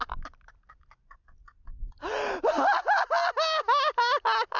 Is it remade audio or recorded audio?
recorded